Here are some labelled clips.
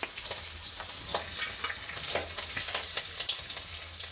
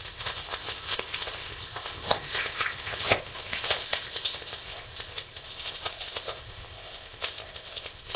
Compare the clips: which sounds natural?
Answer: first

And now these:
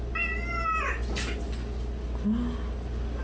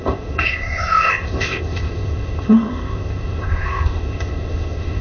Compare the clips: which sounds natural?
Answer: first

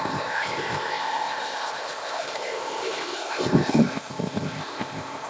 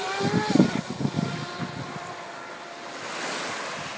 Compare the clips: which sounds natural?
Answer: second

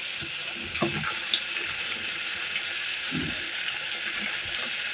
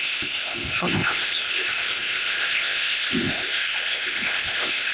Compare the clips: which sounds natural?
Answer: first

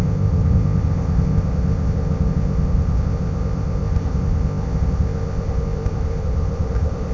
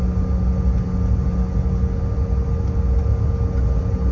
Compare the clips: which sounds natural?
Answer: second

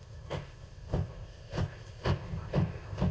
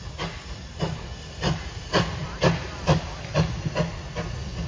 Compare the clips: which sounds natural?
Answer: second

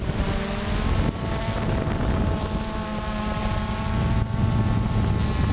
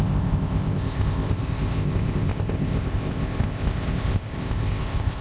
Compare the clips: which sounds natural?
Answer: first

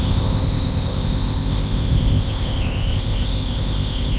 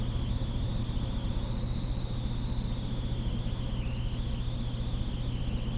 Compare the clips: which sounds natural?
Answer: second